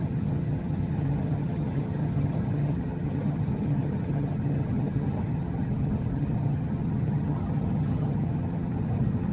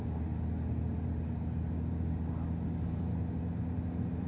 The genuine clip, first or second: second